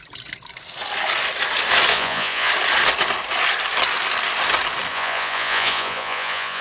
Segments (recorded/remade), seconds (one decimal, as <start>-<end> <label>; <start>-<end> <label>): 0.0-1.9 recorded; 1.9-2.5 remade; 2.5-4.9 recorded; 4.9-6.6 remade